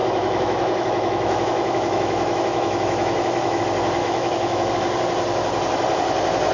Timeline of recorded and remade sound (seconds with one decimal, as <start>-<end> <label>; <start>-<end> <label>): 0.0-3.6 remade; 3.6-4.0 recorded; 4.0-4.7 remade; 4.7-6.5 recorded